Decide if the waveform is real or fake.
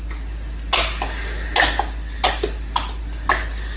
real